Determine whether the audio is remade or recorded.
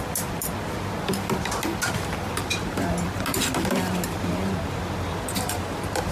recorded